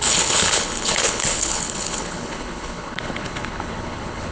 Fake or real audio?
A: fake